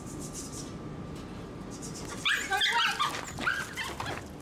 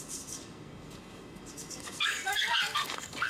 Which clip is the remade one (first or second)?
second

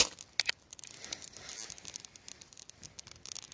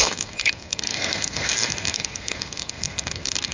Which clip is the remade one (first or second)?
second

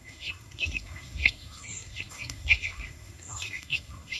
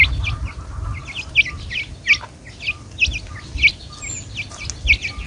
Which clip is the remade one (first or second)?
first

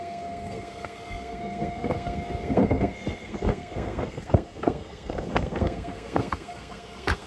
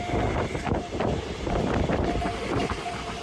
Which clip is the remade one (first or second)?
first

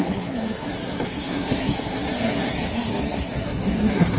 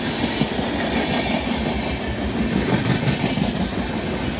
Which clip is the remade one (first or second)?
first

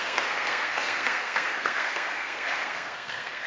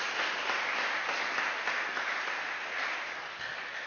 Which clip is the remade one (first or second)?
first